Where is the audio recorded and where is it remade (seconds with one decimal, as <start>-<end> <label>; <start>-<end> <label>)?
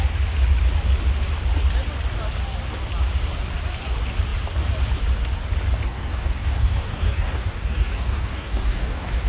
0.0-5.9 recorded; 5.9-9.3 remade